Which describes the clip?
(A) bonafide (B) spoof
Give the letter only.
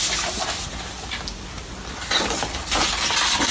A